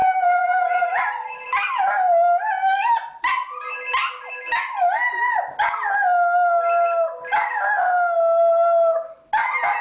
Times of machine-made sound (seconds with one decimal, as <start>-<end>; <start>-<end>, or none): 0.0-1.0